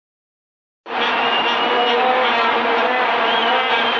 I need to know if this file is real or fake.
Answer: real